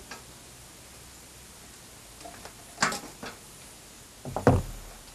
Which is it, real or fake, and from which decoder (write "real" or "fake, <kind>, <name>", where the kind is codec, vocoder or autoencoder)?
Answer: real